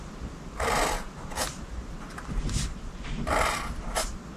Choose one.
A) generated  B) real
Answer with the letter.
B